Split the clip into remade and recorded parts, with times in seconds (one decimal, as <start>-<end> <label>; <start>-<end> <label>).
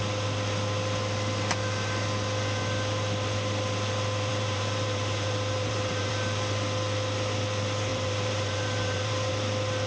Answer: 0.0-4.3 recorded; 4.3-6.1 remade; 6.1-7.9 recorded; 7.9-9.3 remade; 9.3-9.9 recorded